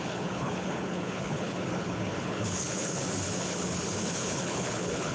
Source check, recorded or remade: remade